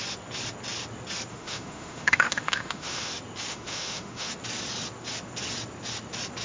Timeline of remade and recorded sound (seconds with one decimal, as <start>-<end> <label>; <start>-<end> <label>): 0.0-1.3 recorded; 1.3-3.1 remade; 3.1-3.5 recorded; 3.5-4.3 remade; 4.3-6.4 recorded